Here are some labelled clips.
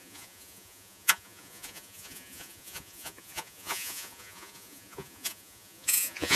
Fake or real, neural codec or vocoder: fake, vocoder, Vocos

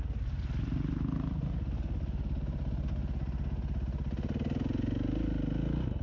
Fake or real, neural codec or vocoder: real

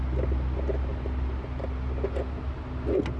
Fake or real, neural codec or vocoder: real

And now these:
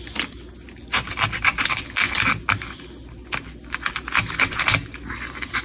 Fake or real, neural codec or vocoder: real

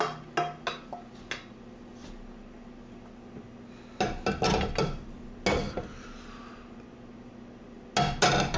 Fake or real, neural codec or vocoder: real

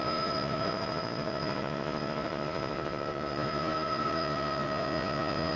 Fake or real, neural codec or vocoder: fake, vocoder, Vocos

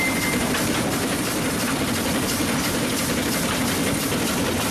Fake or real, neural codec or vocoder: real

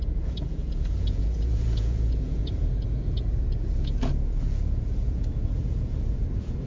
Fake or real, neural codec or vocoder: fake, vocoder, Vocos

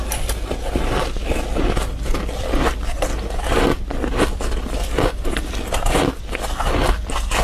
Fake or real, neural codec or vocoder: real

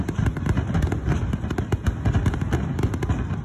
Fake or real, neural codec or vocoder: real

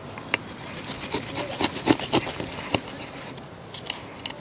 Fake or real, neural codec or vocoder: real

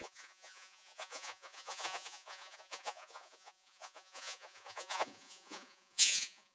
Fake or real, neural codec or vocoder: fake, vocoder, Vocos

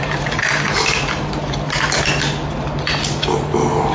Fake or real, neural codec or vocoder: real